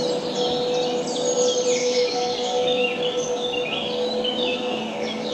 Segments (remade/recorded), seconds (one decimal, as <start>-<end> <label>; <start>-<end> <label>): 0.0-1.8 recorded; 1.8-5.3 remade